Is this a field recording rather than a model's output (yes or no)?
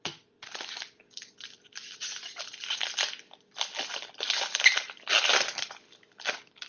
yes